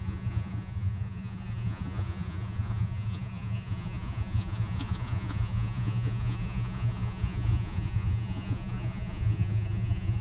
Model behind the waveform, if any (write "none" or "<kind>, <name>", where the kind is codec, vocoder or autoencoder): vocoder, Vocos